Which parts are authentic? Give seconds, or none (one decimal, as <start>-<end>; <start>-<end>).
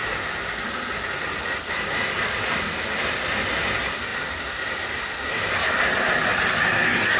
0.0-7.2